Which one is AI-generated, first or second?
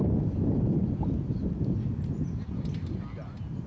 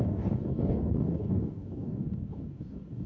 second